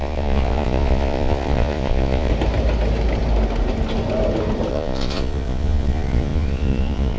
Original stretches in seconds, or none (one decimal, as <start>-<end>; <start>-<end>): 2.3-4.7